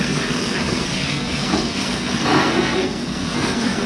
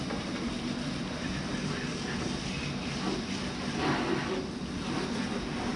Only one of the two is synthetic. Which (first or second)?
first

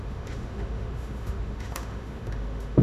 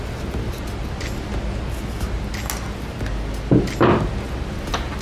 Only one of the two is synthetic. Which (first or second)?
first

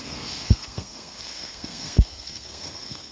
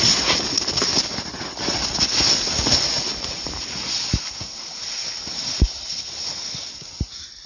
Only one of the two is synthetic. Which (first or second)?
first